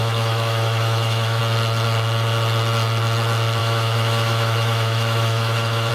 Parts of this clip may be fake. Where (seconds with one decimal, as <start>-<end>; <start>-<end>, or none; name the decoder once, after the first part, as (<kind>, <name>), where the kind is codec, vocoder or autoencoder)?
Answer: 0.0-1.4 (autoencoder, DAC-VAE); 3.6-5.9